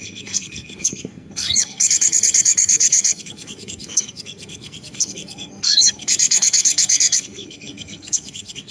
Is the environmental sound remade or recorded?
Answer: remade